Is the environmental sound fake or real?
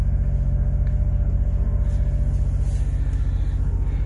real